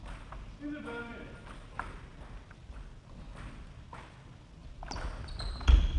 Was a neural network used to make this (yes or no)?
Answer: no